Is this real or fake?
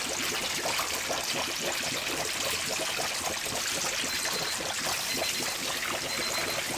real